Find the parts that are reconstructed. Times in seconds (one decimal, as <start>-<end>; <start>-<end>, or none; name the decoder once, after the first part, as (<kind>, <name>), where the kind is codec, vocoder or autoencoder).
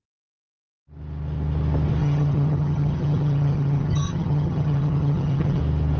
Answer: 2.0-5.6 (vocoder, HiFi-GAN)